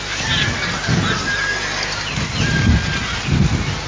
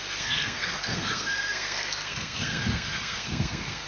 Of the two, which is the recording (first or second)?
first